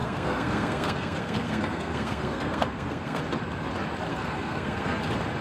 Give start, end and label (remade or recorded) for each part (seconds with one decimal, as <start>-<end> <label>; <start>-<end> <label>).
0.0-3.2 remade; 3.2-4.1 recorded; 4.1-5.0 remade; 5.0-5.4 recorded